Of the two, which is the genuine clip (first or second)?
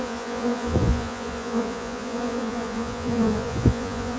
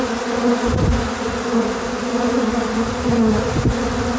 second